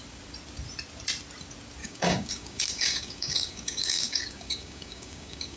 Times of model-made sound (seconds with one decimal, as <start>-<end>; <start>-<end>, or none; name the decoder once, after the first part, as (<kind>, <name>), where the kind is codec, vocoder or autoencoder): 1.8-5.6 (codec, DAC)